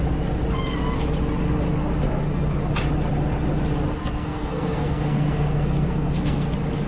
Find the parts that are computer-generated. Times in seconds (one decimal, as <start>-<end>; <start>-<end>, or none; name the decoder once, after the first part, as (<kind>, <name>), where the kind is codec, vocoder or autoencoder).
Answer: 4.0-6.5 (codec, SNAC)